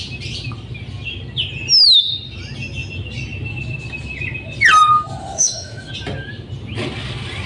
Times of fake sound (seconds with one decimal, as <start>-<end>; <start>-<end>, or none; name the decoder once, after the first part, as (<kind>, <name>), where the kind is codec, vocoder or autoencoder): 5.2-5.9 (autoencoder, DAC-VAE)